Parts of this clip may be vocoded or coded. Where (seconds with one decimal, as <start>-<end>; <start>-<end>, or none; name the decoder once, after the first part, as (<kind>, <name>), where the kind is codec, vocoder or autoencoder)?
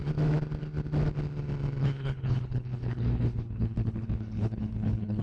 1.8-5.2 (codec, HILCodec)